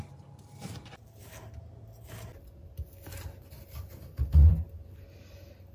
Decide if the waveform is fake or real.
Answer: real